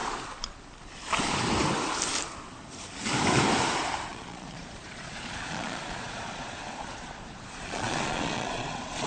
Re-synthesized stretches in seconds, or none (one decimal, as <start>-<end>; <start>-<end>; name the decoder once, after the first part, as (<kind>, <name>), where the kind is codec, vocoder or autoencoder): 4.1-9.1 (vocoder, Vocos)